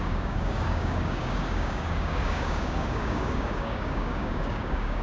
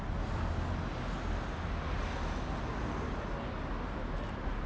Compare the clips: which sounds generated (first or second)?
first